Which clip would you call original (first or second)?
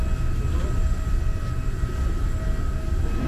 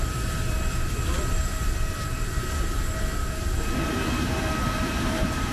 first